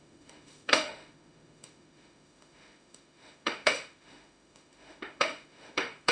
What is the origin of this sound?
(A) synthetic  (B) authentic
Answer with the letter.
A